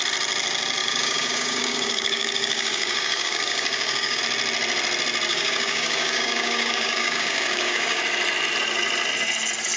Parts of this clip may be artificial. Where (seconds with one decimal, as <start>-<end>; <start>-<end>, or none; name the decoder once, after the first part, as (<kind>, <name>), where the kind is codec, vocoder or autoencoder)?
0.8-4.2 (codec, DAC); 5.3-8.0